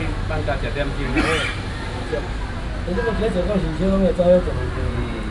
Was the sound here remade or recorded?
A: recorded